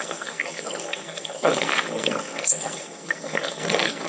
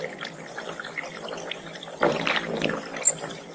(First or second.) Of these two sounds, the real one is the second